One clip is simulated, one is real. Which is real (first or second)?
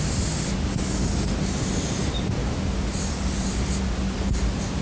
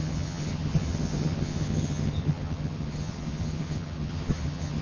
first